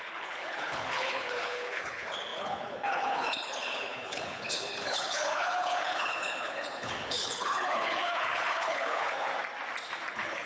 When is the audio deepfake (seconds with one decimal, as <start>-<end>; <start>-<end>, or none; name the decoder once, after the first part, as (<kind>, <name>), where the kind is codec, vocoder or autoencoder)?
0.0-9.3 (codec, HILCodec); 10.1-10.5